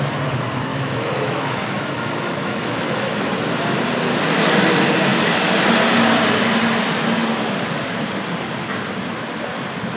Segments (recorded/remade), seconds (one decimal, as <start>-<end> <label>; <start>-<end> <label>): 0.0-0.7 recorded; 0.7-3.2 remade; 3.2-10.0 recorded